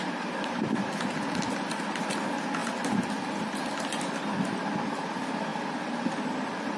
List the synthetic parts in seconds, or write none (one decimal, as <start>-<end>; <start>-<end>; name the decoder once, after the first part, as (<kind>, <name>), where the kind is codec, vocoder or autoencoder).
none